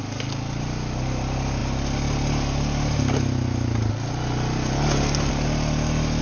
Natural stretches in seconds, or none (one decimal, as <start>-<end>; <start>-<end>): 0.0-6.2